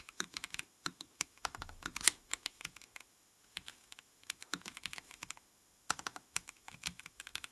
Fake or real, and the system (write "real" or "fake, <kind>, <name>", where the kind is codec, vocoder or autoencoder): fake, autoencoder, DAC-VAE